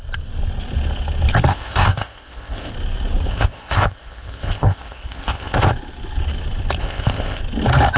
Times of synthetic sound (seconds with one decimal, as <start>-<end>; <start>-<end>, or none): 1.5-2.7; 3.3-5.7; 6.8-7.4